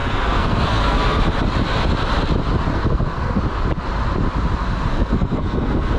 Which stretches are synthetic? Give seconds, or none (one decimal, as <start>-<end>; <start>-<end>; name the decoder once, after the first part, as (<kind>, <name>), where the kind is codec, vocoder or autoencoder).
0.0-1.2 (codec, SNAC); 2.7-3.4; 4.9-6.0